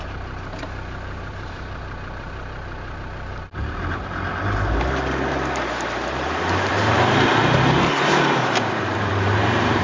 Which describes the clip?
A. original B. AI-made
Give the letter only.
B